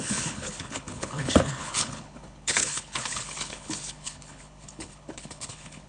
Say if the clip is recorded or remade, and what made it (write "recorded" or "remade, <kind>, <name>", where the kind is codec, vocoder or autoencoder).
remade, codec, HILCodec